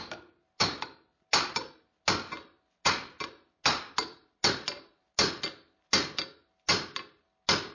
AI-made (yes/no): no